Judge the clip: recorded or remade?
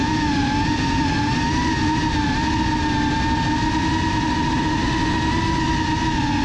recorded